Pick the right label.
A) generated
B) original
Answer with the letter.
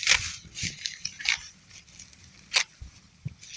B